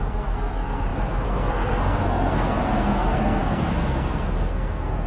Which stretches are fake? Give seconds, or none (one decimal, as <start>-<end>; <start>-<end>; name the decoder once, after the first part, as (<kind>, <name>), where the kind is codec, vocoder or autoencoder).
0.0-5.1 (codec, SNAC)